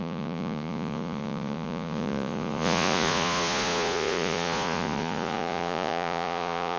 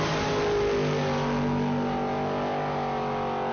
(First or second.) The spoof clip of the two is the first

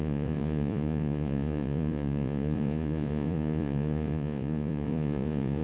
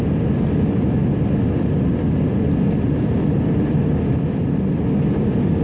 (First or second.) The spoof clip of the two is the first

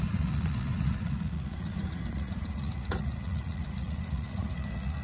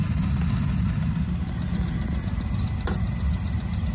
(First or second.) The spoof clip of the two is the first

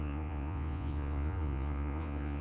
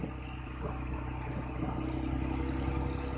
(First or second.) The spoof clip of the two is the first